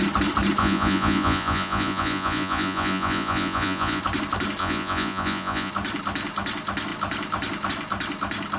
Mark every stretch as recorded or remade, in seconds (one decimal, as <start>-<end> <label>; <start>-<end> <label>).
0.0-0.6 recorded; 0.6-4.0 remade; 4.0-4.6 recorded; 4.6-5.7 remade; 5.7-8.6 recorded